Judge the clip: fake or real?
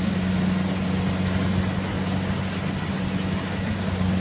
real